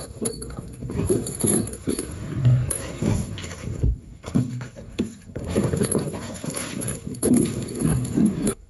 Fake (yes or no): yes